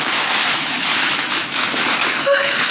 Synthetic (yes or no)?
yes